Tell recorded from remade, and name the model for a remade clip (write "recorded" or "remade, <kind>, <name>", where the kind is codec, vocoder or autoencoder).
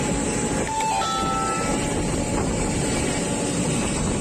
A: recorded